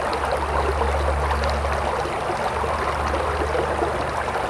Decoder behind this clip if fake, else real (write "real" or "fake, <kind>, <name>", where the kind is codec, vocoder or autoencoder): real